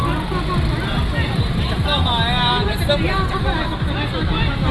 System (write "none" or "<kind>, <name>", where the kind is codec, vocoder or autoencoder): none